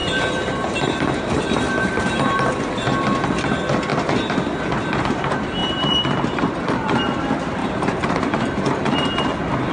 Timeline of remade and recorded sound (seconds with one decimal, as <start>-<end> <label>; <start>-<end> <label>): 0.0-2.5 remade; 2.5-5.6 recorded; 5.6-6.4 remade; 6.4-7.6 recorded; 7.6-8.3 remade; 8.3-9.7 recorded